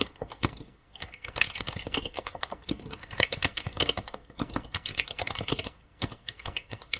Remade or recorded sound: remade